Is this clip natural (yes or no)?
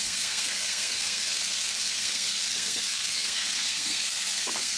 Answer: no